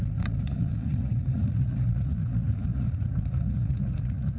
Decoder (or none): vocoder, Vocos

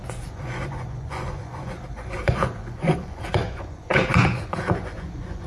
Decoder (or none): vocoder, Vocos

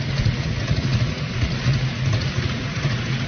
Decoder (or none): vocoder, Vocos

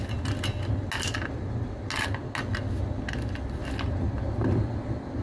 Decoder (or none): none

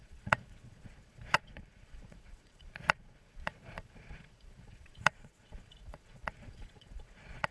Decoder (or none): vocoder, Vocos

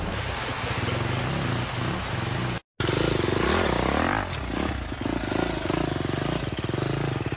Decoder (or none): none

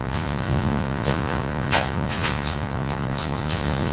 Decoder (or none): vocoder, Vocos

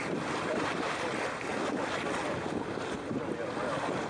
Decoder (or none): none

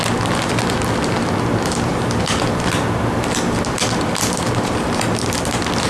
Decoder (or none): none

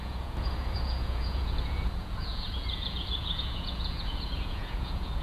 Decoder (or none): vocoder, Vocos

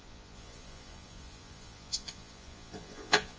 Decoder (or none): vocoder, Vocos